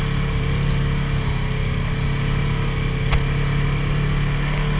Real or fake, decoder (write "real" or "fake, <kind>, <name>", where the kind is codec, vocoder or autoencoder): real